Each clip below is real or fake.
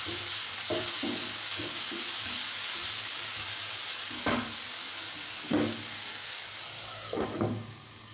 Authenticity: fake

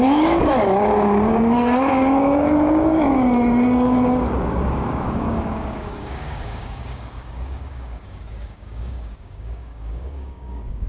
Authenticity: fake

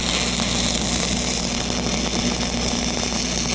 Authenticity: real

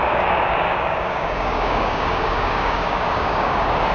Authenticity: fake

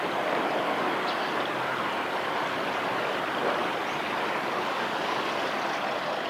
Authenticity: real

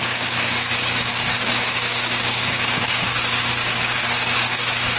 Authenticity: fake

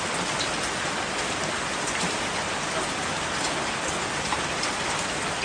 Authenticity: real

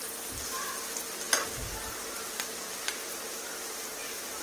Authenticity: real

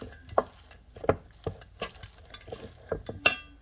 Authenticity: real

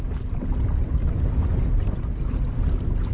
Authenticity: real